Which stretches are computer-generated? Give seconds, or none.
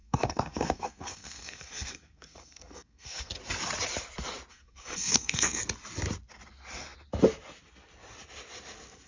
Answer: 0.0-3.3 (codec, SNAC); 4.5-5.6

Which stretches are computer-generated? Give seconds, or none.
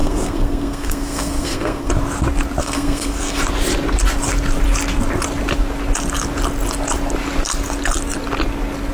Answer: 0.0-1.9 (codec, SNAC); 2.6-3.4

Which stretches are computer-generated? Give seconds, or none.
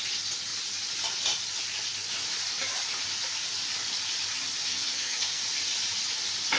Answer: 4.7-5.4 (codec, SNAC)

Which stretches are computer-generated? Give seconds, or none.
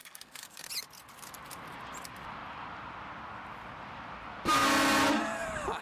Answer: 0.0-0.7 (codec, SNAC)